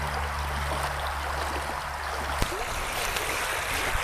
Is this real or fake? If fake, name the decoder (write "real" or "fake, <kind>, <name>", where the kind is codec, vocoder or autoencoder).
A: real